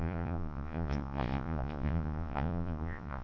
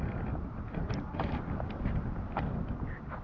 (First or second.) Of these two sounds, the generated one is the first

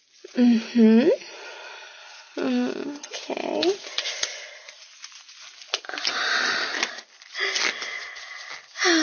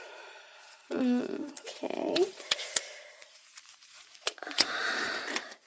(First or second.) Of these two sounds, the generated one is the second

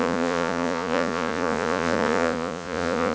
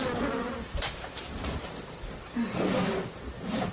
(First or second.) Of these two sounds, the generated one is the first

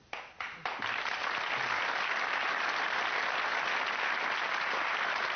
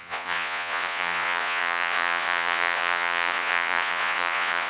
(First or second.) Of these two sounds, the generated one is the second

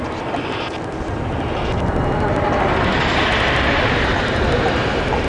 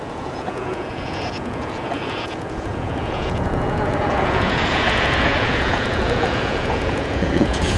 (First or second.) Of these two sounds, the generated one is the second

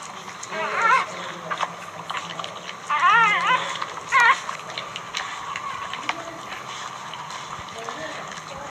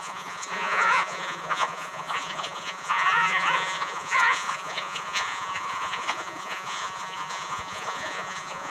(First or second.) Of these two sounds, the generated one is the second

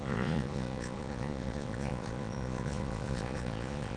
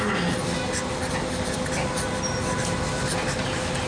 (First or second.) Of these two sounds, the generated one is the first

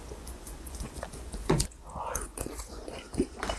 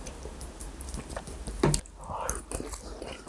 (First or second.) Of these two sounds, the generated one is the first